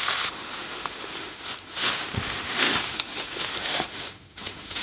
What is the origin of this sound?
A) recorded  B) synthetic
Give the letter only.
B